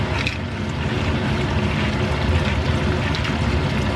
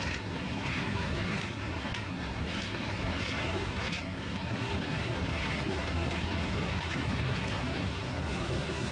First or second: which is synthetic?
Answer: second